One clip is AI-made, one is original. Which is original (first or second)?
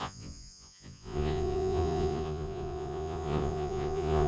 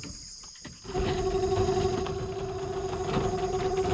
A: second